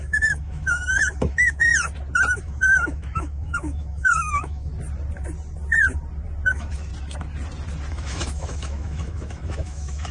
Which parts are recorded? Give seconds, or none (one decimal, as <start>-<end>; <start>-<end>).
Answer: 1.7-2.4; 4.7-6.5; 6.9-7.9

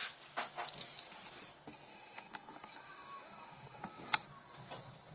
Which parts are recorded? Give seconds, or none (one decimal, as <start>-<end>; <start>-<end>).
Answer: 0.0-1.9; 3.8-5.1

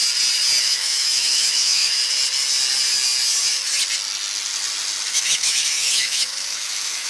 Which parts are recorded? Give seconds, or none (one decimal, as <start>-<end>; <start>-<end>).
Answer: 0.0-0.6; 2.0-5.1

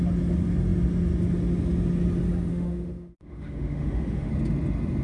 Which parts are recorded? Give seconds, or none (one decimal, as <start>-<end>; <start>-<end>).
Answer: 0.0-2.5; 4.3-5.0

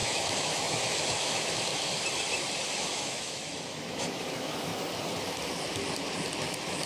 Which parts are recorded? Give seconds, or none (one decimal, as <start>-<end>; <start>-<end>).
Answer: 1.7-2.8; 4.7-6.4

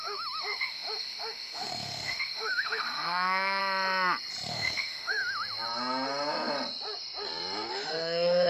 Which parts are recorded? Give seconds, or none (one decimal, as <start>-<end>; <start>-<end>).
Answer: 3.6-4.5; 5.2-7.7